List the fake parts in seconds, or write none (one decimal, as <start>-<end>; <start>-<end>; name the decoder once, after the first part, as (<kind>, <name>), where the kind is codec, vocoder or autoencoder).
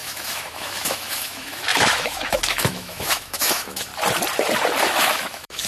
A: 0.0-3.9 (autoencoder, DAC-VAE); 4.8-5.7